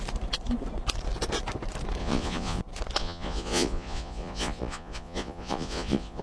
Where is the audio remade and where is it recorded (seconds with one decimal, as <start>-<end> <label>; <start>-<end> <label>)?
0.0-2.0 recorded; 2.0-2.6 remade; 2.6-3.0 recorded; 3.0-6.2 remade

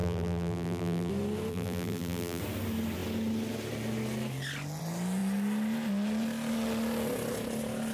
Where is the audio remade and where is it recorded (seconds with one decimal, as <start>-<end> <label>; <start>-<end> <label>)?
0.0-1.1 remade; 1.1-1.5 recorded; 1.5-2.4 remade; 2.4-7.9 recorded

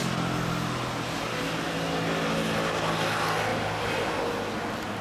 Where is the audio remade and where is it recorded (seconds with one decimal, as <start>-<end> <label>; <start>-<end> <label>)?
0.0-5.0 recorded